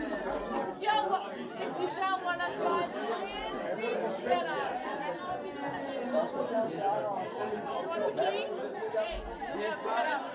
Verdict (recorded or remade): recorded